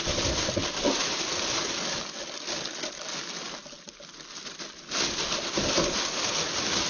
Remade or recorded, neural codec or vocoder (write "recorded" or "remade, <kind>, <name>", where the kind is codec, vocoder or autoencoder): recorded